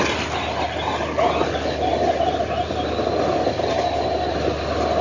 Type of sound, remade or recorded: recorded